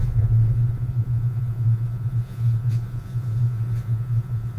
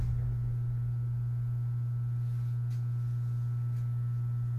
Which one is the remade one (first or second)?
first